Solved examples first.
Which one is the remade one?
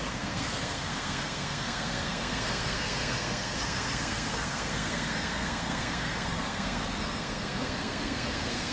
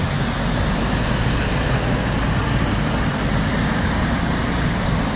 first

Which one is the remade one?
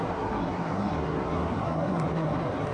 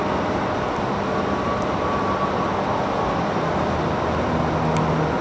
first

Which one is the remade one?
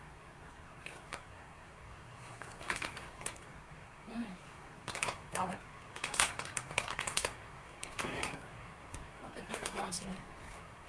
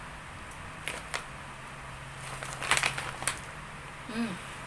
first